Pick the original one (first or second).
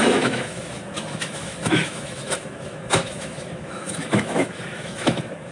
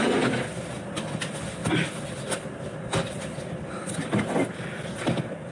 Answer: second